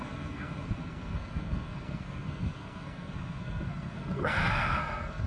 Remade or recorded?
remade